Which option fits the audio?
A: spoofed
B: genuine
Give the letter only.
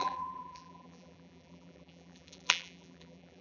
A